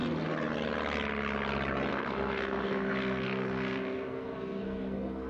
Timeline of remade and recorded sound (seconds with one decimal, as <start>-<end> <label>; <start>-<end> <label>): 0.0-1.9 recorded; 1.9-5.3 remade